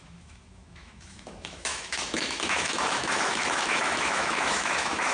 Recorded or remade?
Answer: remade